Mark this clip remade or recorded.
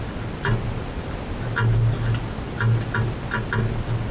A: recorded